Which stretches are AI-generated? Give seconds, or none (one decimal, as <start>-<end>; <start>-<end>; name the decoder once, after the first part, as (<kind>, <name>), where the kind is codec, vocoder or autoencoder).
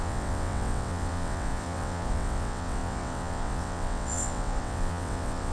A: 0.0-5.5 (vocoder, WaveNeXt)